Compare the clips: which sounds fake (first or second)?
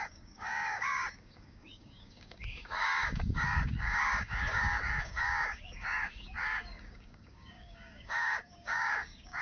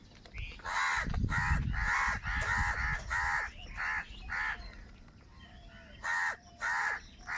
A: first